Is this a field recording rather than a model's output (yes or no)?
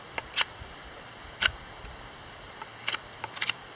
yes